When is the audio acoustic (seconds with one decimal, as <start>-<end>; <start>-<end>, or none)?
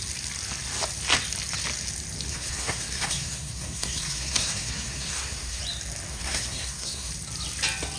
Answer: 0.0-2.3; 5.6-6.1; 7.1-8.0